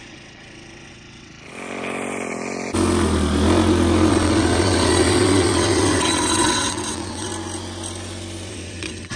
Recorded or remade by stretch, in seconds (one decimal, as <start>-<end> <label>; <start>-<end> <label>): 0.0-1.3 remade; 1.3-4.1 recorded; 4.1-7.3 remade; 7.3-8.5 recorded; 8.5-9.2 remade